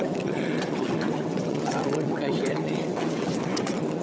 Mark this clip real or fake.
fake